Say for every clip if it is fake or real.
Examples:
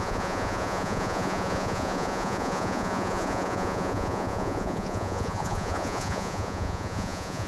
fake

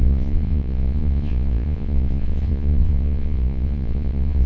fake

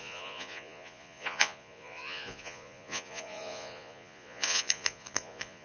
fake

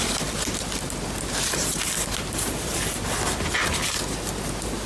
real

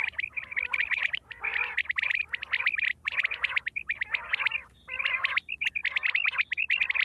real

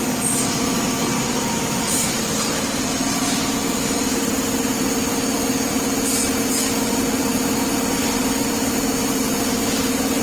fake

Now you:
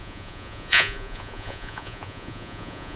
fake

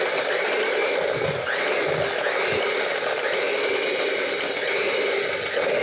real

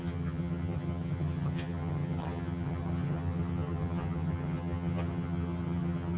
fake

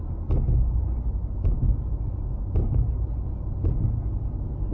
real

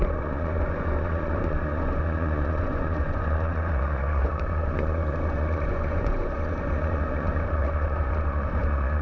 fake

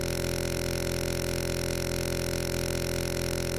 real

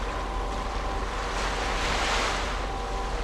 real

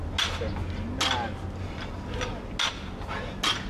real